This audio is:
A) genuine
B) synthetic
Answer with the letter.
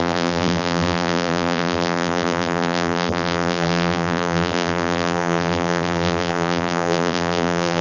B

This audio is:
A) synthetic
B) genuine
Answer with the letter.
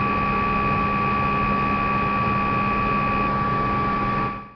B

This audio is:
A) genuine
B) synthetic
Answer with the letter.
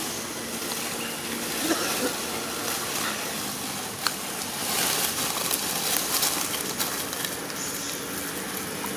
A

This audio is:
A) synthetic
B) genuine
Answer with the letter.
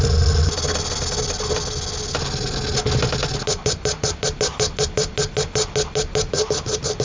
B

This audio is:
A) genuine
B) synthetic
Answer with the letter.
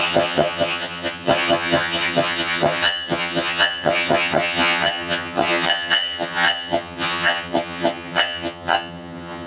B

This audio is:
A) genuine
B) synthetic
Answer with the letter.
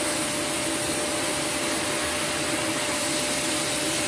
A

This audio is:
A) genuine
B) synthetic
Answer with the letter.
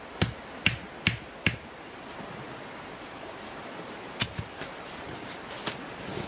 A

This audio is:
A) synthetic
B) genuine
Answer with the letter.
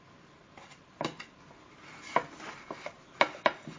B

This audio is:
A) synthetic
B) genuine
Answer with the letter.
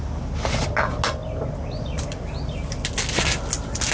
B